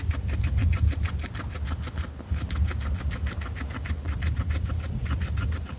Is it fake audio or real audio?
real